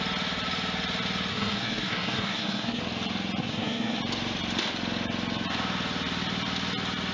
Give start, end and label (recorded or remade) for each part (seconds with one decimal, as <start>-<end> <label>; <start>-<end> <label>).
0.0-1.3 recorded; 1.3-2.8 remade; 2.8-3.4 recorded; 3.4-4.0 remade; 4.0-7.1 recorded